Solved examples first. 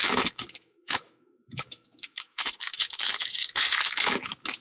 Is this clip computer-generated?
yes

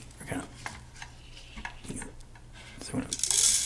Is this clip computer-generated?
no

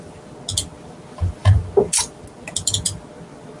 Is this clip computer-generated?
no